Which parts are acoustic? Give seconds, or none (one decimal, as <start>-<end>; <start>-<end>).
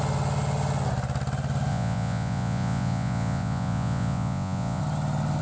0.0-1.7; 4.8-5.4